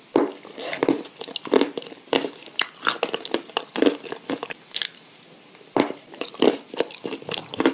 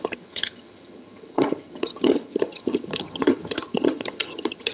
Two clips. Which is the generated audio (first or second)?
second